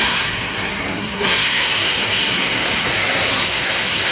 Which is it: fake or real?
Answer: fake